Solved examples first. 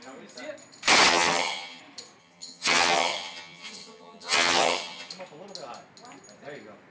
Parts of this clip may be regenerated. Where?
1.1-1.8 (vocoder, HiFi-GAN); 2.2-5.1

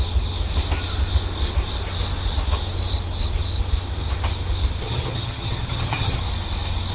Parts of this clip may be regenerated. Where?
4.8-6.2 (vocoder, HiFi-GAN)

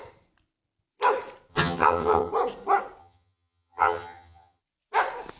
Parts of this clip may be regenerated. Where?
1.5-2.3 (vocoder, HiFi-GAN); 3.0-4.6

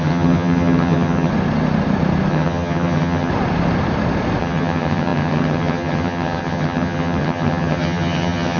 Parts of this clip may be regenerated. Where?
0.0-1.3 (vocoder, HiFi-GAN); 2.3-3.3; 4.4-8.6